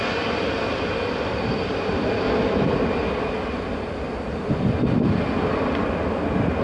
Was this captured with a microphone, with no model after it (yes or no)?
yes